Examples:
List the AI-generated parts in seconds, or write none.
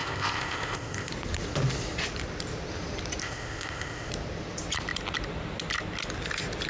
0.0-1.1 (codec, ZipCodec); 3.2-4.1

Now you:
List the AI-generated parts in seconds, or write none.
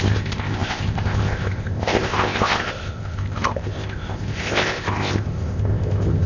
0.0-6.3 (codec, ZipCodec)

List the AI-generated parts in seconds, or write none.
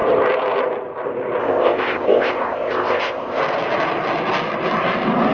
1.4-3.4 (codec, ZipCodec)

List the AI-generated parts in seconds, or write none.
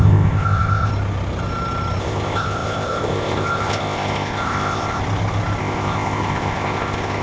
0.0-0.9 (codec, ZipCodec); 2.0-5.0; 5.6-7.2